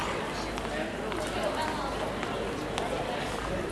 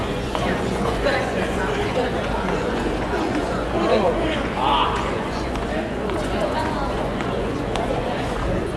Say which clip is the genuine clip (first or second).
first